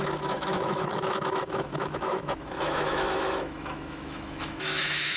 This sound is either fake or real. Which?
fake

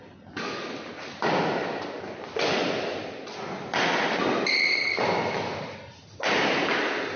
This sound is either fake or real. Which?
real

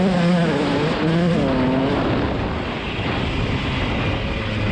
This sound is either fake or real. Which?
real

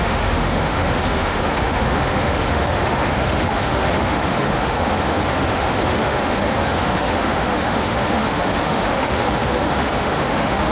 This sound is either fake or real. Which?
fake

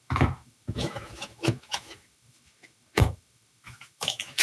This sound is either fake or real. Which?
fake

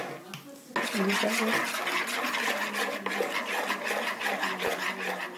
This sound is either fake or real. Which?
real